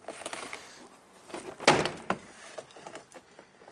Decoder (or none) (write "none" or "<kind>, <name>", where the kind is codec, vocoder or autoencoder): none